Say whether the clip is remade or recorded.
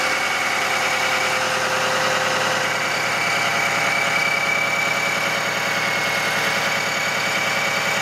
recorded